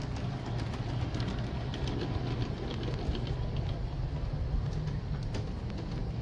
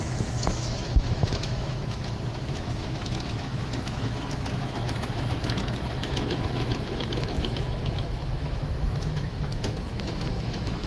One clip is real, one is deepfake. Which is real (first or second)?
first